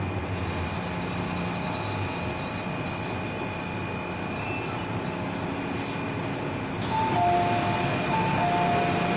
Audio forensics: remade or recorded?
recorded